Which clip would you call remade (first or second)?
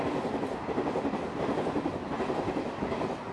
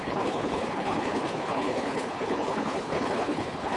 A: second